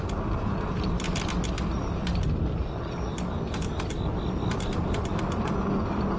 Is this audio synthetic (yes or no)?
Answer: no